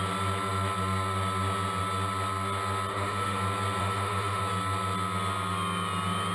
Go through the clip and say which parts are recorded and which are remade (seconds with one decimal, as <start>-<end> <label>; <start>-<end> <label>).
0.0-2.9 recorded; 2.9-3.4 remade; 3.4-3.8 recorded; 3.8-4.4 remade; 4.4-6.3 recorded